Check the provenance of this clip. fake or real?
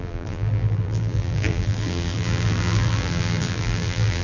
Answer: fake